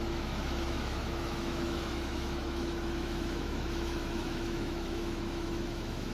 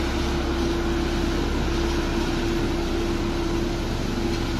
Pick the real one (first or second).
second